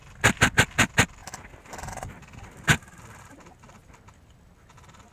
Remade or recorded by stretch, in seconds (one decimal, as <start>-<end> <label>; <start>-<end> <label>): 0.0-5.1 recorded

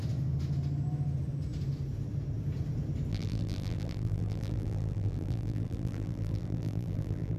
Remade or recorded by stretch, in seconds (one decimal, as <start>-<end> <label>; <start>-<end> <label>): 0.0-3.1 recorded; 3.1-7.4 remade

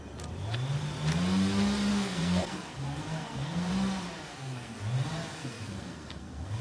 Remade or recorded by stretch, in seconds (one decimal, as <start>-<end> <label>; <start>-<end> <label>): 0.0-1.9 recorded; 1.9-3.7 remade; 3.7-4.3 recorded; 4.3-4.8 remade; 4.8-5.3 recorded; 5.3-6.6 remade